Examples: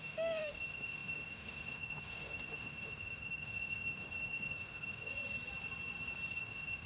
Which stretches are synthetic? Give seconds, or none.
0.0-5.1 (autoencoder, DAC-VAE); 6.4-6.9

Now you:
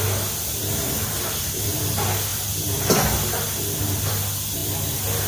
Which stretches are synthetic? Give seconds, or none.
0.6-1.8 (vocoder, BigVGAN v2)

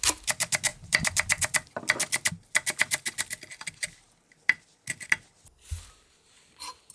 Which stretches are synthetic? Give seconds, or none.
0.7-2.3 (vocoder, BigVGAN v2)

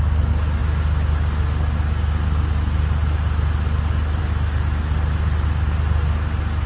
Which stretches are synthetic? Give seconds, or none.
none